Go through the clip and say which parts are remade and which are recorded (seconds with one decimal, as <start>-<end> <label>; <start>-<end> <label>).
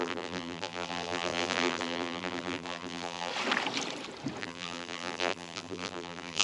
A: 0.0-3.3 remade; 3.3-4.4 recorded; 4.4-6.4 remade